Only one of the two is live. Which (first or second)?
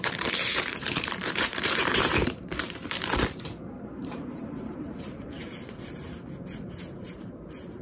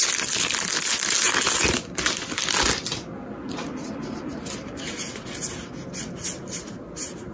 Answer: second